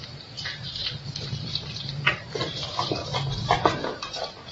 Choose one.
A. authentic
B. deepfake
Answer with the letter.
B